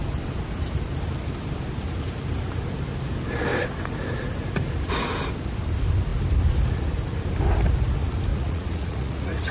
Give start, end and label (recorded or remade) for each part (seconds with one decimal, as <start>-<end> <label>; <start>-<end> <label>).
0.0-8.3 recorded; 8.3-9.5 remade